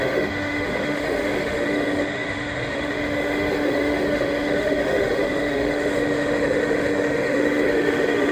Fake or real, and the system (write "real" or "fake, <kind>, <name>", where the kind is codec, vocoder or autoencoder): fake, autoencoder, DAC-VAE